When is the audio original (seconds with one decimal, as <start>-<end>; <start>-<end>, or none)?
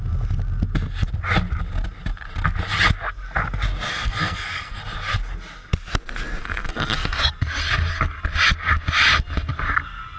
0.0-3.9; 4.8-6.4; 7.2-10.2